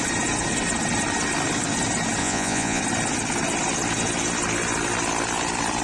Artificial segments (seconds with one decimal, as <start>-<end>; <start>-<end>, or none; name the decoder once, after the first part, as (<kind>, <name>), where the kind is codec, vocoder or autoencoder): 2.2-2.8 (vocoder, Vocos)